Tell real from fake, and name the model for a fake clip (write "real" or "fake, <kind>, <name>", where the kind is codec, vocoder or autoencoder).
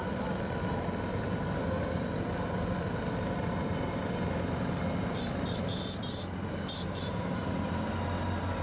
real